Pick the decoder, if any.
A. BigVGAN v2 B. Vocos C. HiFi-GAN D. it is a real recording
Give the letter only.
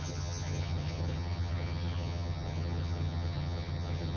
C